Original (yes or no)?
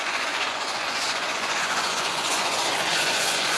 no